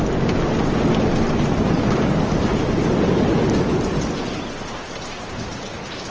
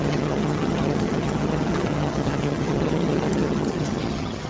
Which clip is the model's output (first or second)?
second